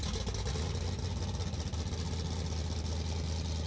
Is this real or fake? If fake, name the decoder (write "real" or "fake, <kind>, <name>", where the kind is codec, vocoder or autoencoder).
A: real